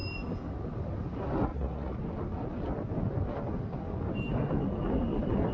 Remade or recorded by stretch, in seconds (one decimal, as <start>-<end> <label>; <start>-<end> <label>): 0.0-1.5 recorded; 1.5-2.0 remade; 2.0-5.5 recorded